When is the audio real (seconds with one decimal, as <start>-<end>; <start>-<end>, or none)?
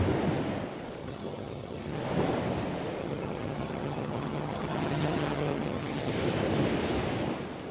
0.0-1.0; 2.0-3.0; 6.1-7.7